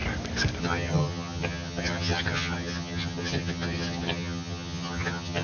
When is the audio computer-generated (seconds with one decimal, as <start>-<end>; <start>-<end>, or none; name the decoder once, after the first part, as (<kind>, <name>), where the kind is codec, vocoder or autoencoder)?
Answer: 0.6-5.4 (vocoder, HiFi-GAN)